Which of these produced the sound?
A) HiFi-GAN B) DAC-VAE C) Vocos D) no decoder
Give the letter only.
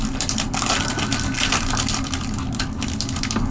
D